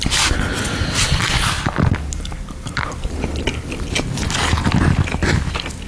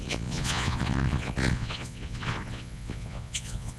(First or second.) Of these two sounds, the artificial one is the second